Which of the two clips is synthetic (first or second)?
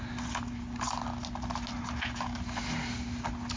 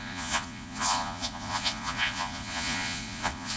second